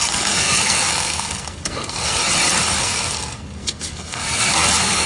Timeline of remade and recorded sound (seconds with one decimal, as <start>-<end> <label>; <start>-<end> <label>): 0.0-2.2 remade; 2.2-2.8 recorded; 2.8-5.1 remade